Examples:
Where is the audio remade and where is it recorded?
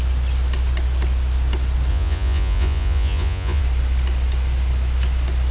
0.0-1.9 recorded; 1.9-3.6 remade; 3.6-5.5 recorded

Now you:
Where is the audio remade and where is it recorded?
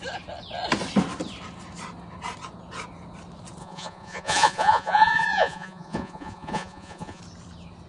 0.0-3.6 recorded; 3.6-7.2 remade; 7.2-7.9 recorded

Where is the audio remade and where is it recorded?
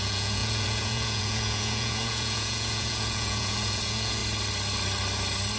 0.0-4.2 remade; 4.2-5.6 recorded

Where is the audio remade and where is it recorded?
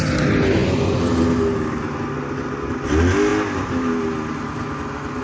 0.0-5.2 recorded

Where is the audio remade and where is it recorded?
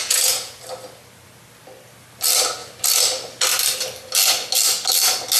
0.0-0.6 remade; 0.6-5.4 recorded